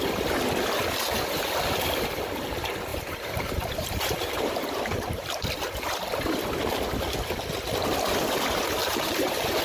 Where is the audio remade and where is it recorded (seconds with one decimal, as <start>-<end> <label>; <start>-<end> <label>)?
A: 0.0-2.9 recorded; 2.9-5.4 remade; 5.4-8.8 recorded; 8.8-9.6 remade